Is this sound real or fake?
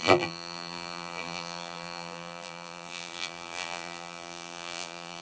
fake